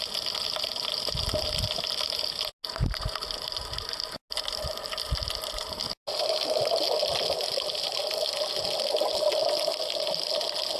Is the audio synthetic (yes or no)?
no